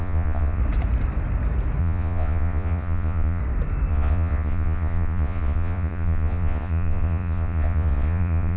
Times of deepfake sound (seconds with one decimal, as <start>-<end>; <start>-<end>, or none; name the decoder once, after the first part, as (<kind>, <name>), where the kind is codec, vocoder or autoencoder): 0.0-0.6 (vocoder, Vocos); 1.8-3.4; 3.9-8.6